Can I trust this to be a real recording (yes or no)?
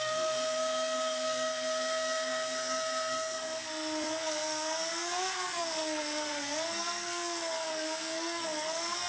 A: no